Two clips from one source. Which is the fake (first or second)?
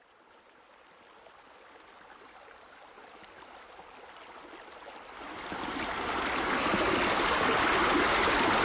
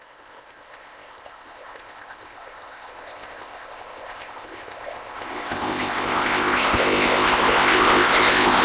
second